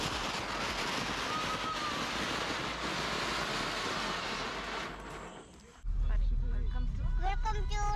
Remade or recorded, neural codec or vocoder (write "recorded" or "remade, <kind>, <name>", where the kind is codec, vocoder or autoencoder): recorded